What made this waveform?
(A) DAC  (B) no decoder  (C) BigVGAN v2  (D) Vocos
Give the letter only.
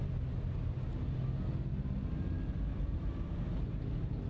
B